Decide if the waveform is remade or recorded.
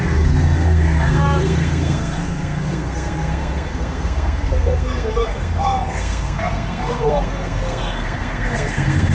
remade